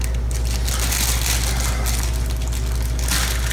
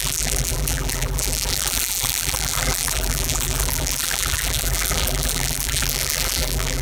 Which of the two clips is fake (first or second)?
second